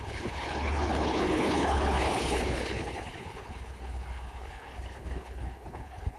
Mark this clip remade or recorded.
remade